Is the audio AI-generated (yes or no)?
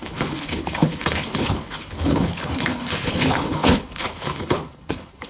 yes